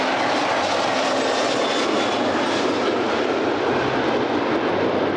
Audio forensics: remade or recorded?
recorded